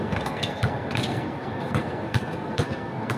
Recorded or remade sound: remade